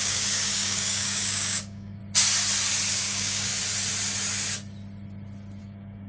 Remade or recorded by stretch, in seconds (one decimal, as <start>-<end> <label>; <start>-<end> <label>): 0.0-2.0 remade; 2.0-2.9 recorded; 2.9-3.5 remade; 3.5-5.6 recorded; 5.6-6.1 remade